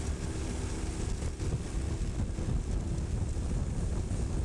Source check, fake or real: real